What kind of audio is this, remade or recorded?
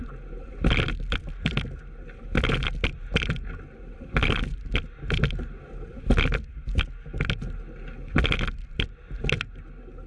recorded